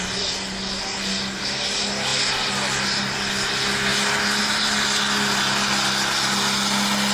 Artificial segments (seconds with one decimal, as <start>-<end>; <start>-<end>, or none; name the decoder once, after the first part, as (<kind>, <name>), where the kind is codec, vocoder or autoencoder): none